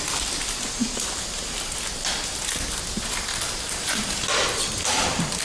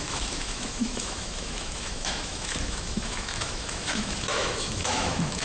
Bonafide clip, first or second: first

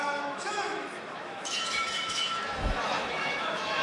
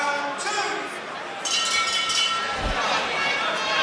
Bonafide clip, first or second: second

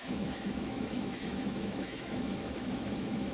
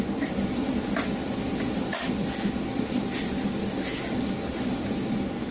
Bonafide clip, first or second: second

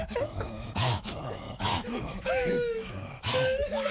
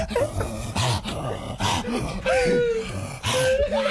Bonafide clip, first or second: second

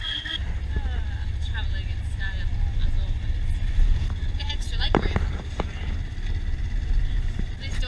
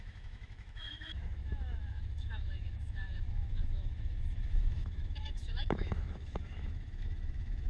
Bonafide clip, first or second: first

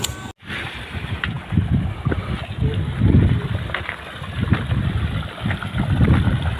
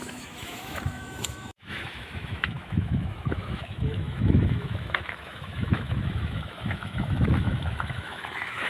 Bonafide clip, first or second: first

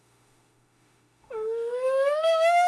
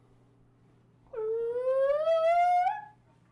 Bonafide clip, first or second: second